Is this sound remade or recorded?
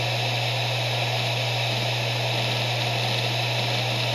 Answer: recorded